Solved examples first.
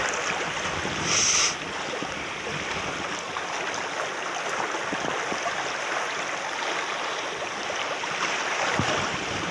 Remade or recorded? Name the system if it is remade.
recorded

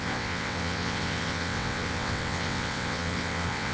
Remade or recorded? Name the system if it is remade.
remade, vocoder, WaveNeXt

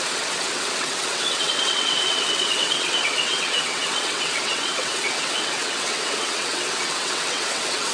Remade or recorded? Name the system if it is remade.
remade, vocoder, WaveNeXt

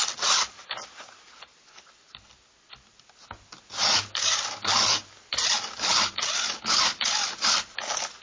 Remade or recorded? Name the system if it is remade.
recorded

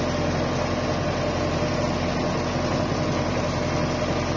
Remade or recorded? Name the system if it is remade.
recorded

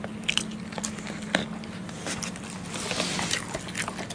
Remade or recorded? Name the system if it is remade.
recorded